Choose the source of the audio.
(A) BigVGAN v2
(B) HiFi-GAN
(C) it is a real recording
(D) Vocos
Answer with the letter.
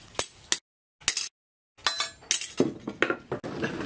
C